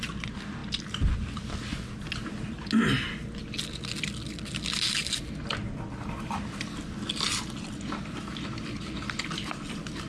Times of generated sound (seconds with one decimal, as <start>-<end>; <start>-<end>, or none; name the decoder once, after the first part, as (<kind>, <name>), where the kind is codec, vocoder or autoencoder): none